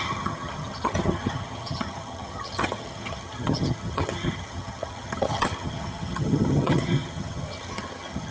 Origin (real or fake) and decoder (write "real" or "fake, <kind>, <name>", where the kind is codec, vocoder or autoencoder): fake, vocoder, HiFi-GAN